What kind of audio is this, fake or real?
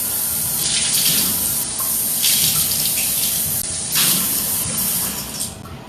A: real